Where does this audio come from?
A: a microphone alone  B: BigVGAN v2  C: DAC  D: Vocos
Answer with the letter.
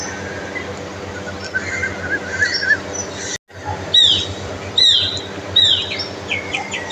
A